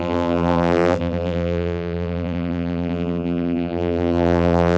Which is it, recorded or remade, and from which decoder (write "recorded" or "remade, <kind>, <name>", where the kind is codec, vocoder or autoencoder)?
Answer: remade, vocoder, BigVGAN v2